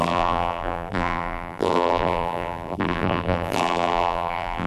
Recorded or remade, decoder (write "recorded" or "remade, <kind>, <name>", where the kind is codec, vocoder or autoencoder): remade, vocoder, BigVGAN v2